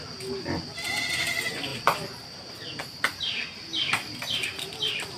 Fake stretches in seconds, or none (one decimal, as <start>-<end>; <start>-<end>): 1.7-4.8